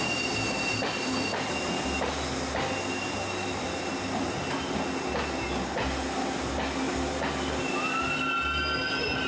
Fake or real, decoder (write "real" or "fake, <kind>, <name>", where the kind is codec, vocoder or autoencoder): real